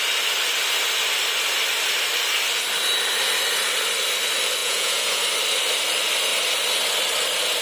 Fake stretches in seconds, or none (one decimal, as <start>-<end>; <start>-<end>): 4.6-5.2